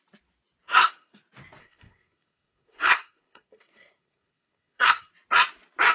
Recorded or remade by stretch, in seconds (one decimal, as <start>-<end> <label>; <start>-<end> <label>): 0.0-0.7 recorded; 0.7-1.2 remade; 1.2-1.6 recorded; 1.6-5.1 remade; 5.1-5.9 recorded